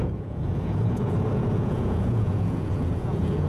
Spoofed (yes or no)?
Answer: yes